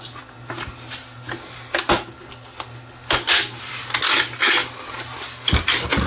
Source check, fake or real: real